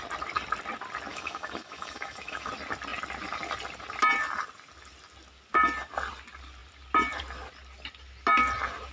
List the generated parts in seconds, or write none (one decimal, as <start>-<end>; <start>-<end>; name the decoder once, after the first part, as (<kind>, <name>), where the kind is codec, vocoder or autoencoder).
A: 1.1-2.5 (autoencoder, DAC-VAE)